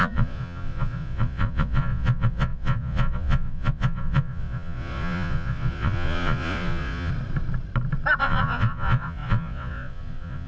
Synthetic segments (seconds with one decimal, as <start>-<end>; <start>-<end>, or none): 0.0-7.1; 8.2-10.5